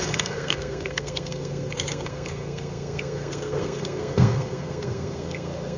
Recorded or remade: remade